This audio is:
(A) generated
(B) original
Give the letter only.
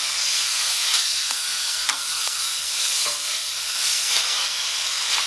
A